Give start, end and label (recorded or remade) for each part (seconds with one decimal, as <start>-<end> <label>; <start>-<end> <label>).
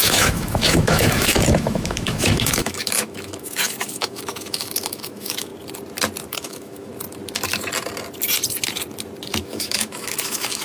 0.0-5.5 remade; 5.5-6.3 recorded; 6.3-6.9 remade; 6.9-9.4 recorded; 9.4-10.6 remade